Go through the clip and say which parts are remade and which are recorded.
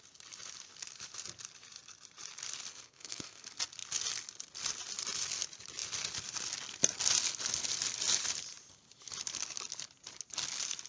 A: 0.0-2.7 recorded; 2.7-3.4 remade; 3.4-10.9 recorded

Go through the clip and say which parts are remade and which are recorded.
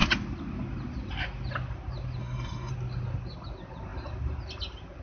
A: 0.0-2.2 recorded; 2.2-2.7 remade; 2.7-5.0 recorded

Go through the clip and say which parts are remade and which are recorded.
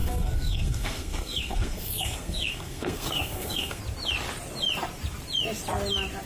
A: 0.0-3.8 remade; 3.8-6.3 recorded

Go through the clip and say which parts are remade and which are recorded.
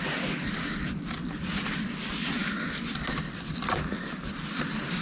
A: 0.0-5.0 recorded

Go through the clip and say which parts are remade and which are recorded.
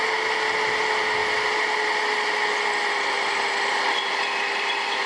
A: 0.0-5.1 recorded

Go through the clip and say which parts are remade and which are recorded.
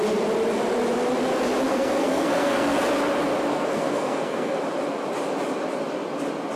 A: 0.0-1.7 recorded; 1.7-2.8 remade; 2.8-3.5 recorded; 3.5-4.6 remade; 4.6-6.6 recorded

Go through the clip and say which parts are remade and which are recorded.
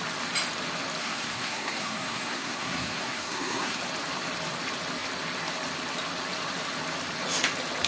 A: 0.0-1.0 recorded; 1.0-3.8 remade; 3.8-7.9 recorded